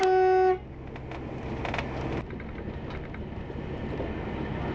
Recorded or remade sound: recorded